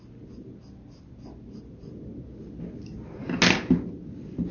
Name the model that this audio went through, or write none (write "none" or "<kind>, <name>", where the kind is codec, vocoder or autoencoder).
none